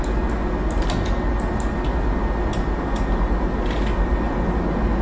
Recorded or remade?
recorded